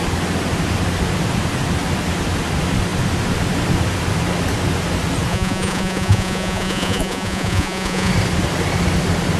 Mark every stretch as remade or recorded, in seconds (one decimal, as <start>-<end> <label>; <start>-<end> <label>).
0.0-5.3 recorded; 5.3-8.1 remade; 8.1-9.4 recorded